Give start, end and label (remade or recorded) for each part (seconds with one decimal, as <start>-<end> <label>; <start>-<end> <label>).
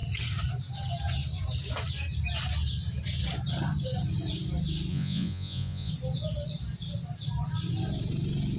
0.0-4.9 recorded; 4.9-5.9 remade; 5.9-8.6 recorded